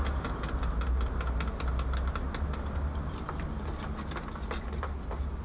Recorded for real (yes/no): yes